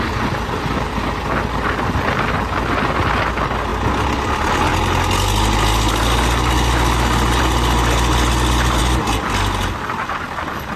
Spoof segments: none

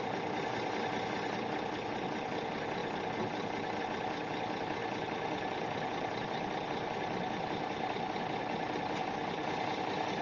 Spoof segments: none

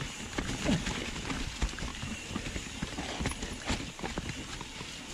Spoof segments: 0.0-1.9 (vocoder, BigVGAN v2)

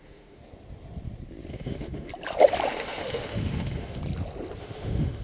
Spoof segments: 0.0-0.4 (autoencoder, DAC-VAE); 1.5-2.1; 2.7-4.0; 4.6-5.2

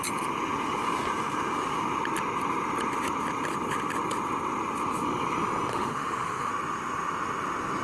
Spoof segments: 5.7-6.5 (autoencoder, DAC-VAE)

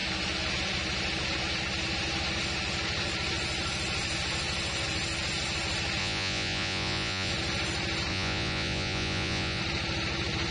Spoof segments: 6.0-7.3 (vocoder, Vocos); 8.1-9.6